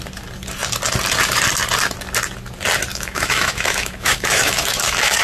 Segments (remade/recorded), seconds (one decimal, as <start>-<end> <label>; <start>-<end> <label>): 0.0-2.9 recorded; 2.9-5.2 remade